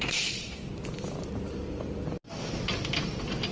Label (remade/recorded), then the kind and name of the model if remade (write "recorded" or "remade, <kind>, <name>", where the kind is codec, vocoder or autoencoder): recorded